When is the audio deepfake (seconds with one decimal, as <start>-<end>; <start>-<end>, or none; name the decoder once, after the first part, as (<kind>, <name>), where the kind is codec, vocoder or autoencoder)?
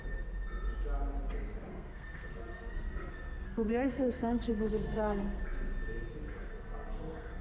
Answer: 1.7-5.4 (codec, SNAC); 6.3-7.4